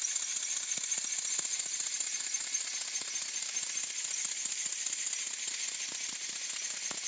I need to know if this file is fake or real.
real